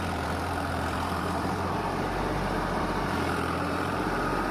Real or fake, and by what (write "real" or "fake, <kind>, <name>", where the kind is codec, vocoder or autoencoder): fake, vocoder, BigVGAN v2